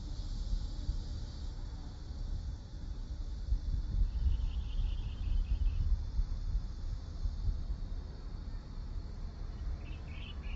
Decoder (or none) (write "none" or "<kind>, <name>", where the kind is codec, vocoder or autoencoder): none